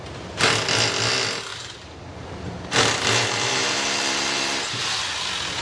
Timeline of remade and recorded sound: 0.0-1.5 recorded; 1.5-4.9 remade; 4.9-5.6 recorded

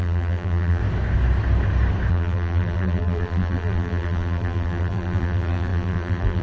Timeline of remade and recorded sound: 0.0-0.8 remade; 0.8-2.1 recorded; 2.1-6.4 remade

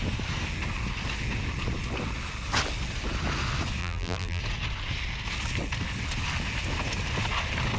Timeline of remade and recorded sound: 0.0-3.8 recorded; 3.8-4.4 remade; 4.4-7.8 recorded

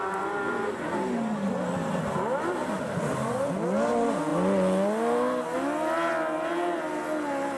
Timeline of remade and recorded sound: 0.0-2.6 recorded; 2.6-3.5 remade; 3.5-7.6 recorded

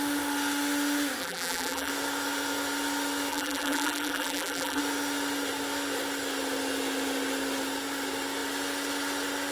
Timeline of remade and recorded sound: 0.0-1.2 recorded; 1.2-1.9 remade; 1.9-3.3 recorded; 3.3-4.8 remade; 4.8-9.5 recorded

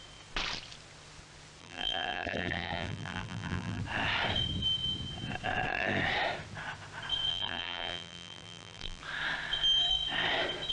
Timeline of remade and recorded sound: 0.0-1.6 recorded; 1.6-3.8 remade; 3.8-7.3 recorded; 7.3-9.0 remade; 9.0-10.7 recorded

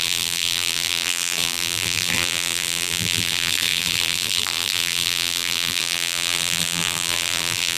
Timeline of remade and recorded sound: 0.0-7.8 remade

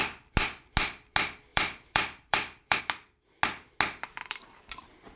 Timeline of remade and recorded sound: 0.0-1.5 recorded; 1.5-2.8 remade; 2.8-4.2 recorded; 4.2-4.8 remade; 4.8-5.2 recorded